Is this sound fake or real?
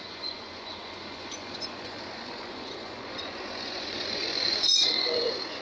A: fake